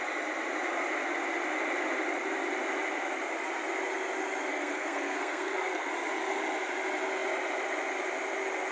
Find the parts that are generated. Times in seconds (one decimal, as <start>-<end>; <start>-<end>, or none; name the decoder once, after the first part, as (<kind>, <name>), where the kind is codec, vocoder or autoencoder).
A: 4.5-5.9 (codec, SNAC)